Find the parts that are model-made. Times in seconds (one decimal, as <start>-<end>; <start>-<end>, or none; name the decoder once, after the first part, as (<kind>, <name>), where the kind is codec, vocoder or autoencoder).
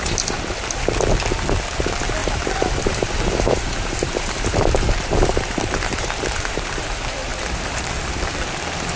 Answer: 2.2-6.8 (vocoder, BigVGAN v2); 7.3-7.9